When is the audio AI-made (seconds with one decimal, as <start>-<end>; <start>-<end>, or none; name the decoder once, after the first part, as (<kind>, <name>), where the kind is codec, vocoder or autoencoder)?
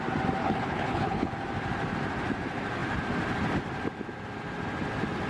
0.4-1.3 (codec, HILCodec)